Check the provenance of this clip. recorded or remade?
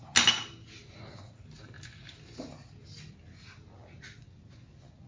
recorded